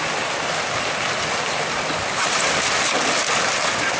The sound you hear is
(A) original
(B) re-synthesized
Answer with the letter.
A